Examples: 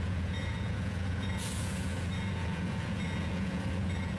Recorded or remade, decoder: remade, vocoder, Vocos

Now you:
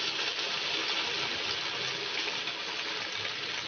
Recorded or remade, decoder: recorded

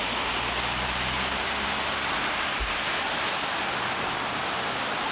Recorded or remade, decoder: recorded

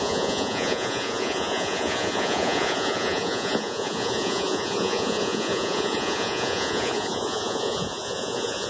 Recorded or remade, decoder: remade, vocoder, Vocos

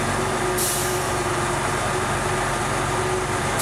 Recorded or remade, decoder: recorded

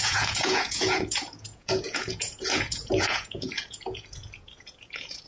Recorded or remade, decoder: remade, vocoder, Vocos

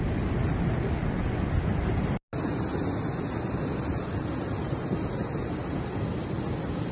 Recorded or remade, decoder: recorded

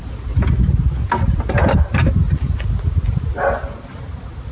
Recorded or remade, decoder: recorded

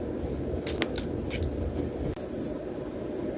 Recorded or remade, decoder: recorded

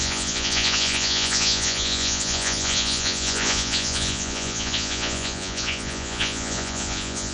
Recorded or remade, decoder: remade, vocoder, Vocos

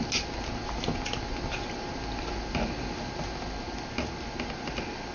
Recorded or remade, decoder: recorded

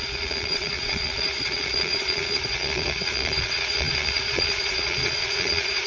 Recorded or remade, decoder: remade, vocoder, Vocos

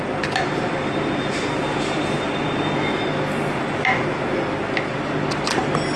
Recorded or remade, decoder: recorded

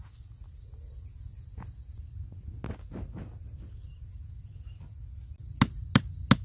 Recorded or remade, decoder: recorded